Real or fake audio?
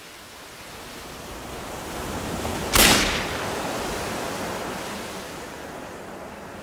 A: real